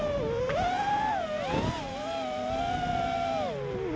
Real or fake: real